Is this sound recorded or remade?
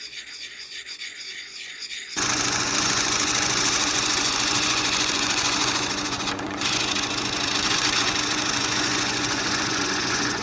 remade